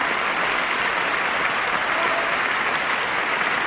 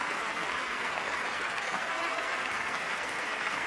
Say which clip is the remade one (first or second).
second